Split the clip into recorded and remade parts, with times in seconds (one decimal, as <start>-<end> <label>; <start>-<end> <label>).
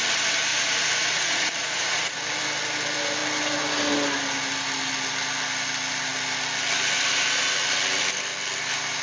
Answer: 0.0-0.5 recorded; 0.5-2.2 remade; 2.2-9.0 recorded